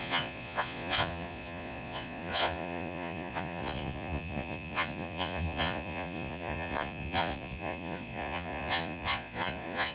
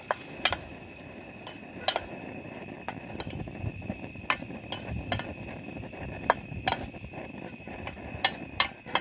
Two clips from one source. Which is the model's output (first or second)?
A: first